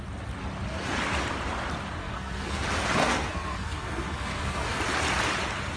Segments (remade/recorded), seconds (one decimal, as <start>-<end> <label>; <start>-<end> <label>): 0.0-2.0 recorded; 2.0-2.6 remade; 2.6-3.0 recorded; 3.0-4.8 remade; 4.8-5.8 recorded